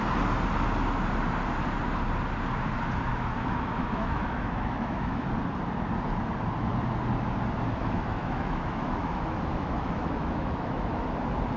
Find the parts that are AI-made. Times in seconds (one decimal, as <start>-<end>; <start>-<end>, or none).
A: 3.1-5.2; 7.8-11.0